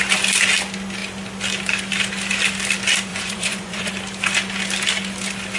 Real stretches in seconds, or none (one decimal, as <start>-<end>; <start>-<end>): 0.0-3.1; 3.9-5.6